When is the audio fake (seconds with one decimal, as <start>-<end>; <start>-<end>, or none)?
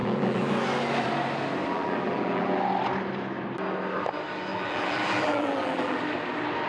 0.0-0.5; 1.6-2.6; 4.5-6.0